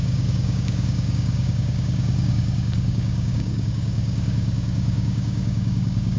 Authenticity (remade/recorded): remade